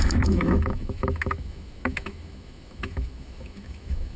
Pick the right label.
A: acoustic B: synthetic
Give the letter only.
B